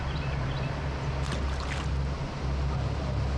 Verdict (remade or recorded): recorded